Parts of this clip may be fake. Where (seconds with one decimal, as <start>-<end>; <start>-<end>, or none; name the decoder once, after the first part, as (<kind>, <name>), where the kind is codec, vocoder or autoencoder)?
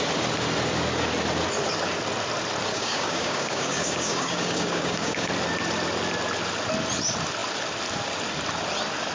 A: 2.7-5.3 (codec, DAC)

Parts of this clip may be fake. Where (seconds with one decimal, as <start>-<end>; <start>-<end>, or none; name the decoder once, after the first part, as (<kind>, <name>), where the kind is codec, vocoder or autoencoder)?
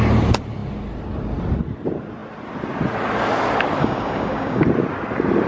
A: 3.8-4.6 (codec, DAC)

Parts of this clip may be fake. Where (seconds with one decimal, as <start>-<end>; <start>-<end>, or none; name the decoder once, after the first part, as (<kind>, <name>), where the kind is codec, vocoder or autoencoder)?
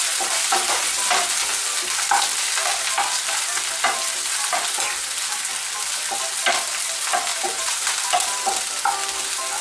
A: 7.3-8.6 (vocoder, BigVGAN v2)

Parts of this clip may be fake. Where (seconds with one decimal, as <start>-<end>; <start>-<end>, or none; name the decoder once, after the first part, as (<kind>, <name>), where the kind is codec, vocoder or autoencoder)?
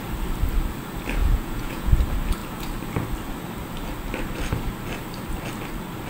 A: 1.2-1.9 (vocoder, Vocos)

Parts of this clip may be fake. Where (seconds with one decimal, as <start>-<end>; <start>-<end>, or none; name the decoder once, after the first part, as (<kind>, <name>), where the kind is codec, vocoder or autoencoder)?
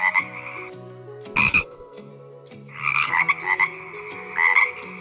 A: 1.4-2.1 (codec, SNAC); 2.8-3.3